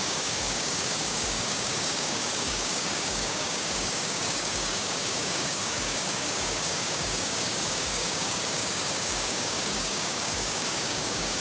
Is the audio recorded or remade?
remade